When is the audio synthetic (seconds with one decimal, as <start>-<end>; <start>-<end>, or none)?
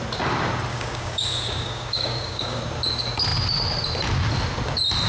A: 0.7-2.6